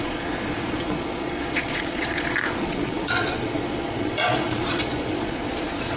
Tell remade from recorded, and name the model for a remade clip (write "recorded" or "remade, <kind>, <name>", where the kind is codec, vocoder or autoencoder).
remade, vocoder, Vocos